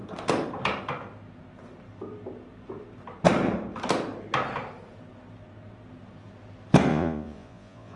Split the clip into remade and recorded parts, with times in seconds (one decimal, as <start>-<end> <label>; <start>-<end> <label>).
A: 0.0-6.9 recorded; 6.9-8.0 remade